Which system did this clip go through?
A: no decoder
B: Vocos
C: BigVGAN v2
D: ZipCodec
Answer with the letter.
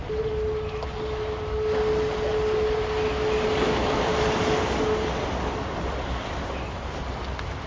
A